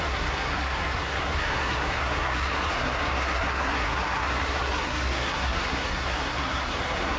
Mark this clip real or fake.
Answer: fake